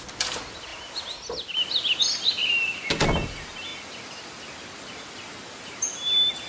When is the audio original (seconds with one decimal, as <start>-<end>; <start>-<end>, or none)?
0.0-6.5